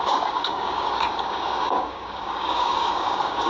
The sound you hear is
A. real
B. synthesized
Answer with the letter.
B